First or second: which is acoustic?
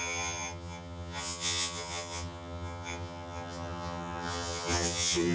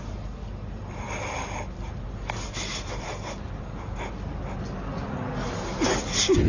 second